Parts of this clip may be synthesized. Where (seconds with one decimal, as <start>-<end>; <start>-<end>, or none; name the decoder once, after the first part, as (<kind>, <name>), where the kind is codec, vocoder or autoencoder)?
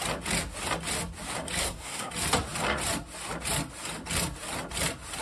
1.6-2.1 (codec, SNAC)